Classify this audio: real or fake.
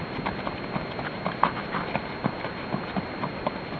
real